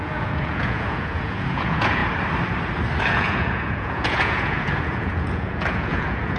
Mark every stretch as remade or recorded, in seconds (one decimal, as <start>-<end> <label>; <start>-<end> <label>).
0.0-2.0 remade; 2.0-3.0 recorded; 3.0-6.4 remade